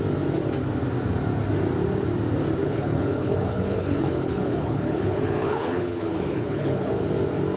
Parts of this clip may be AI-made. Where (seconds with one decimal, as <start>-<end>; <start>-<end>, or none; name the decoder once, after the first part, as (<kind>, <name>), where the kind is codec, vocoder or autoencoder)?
2.6-6.9 (codec, HILCodec)